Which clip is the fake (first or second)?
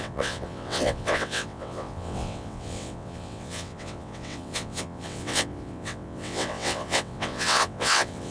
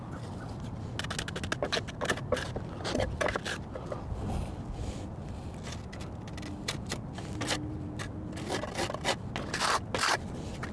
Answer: first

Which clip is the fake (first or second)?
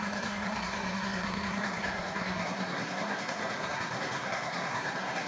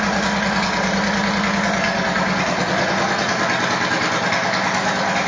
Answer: first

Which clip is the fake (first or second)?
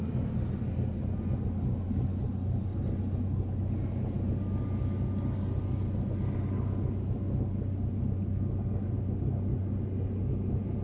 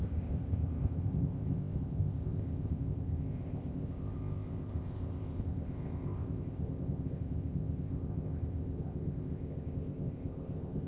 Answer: second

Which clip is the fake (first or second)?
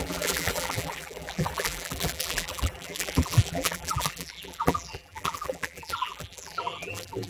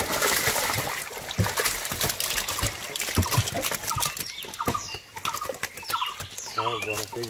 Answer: first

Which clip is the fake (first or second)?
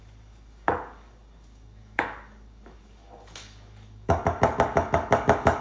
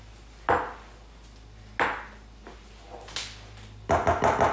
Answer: first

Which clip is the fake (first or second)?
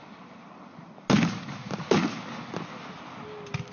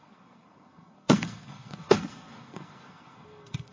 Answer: second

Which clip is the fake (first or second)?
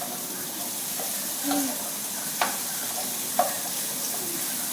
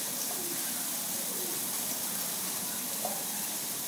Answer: second